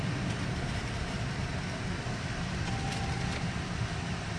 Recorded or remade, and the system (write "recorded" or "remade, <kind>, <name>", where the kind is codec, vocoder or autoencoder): recorded